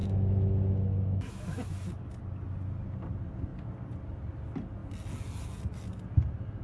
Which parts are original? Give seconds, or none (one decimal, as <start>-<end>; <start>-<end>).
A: 2.0-6.6